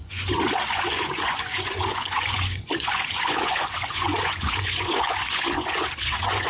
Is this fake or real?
fake